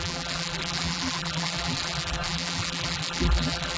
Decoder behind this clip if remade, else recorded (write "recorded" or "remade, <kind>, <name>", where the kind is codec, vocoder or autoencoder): remade, vocoder, BigVGAN v2